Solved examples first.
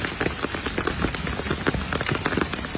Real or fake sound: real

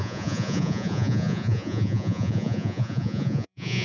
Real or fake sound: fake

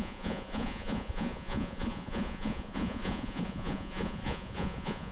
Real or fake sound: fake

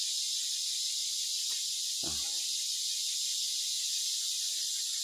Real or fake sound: real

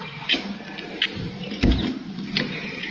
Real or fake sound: real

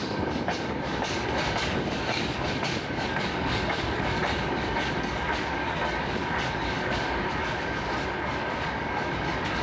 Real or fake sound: fake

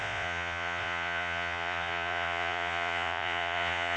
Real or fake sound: fake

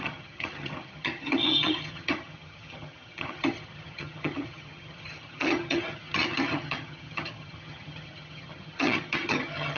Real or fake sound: fake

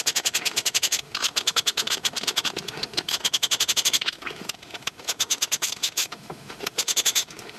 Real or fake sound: fake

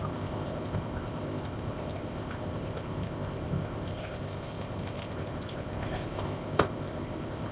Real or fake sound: fake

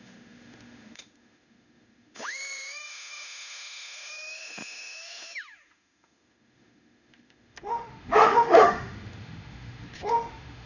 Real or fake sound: fake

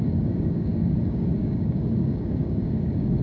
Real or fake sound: fake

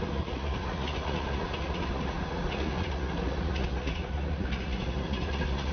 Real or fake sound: fake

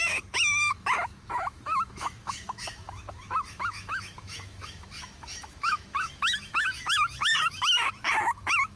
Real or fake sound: fake